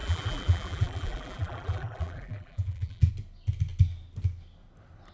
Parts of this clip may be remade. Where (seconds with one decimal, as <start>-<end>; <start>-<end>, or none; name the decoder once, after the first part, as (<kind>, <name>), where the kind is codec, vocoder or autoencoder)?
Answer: 0.0-3.1 (vocoder, BigVGAN v2)

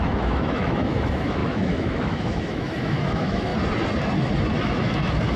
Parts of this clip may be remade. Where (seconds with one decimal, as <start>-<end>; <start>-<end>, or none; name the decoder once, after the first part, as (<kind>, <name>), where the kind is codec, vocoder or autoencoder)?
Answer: 0.0-3.5 (autoencoder, DAC-VAE); 4.6-5.4